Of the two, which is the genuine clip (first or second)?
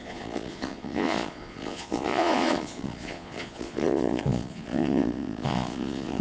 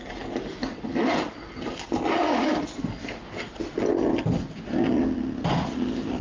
second